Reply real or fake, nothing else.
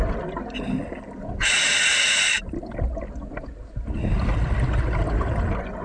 real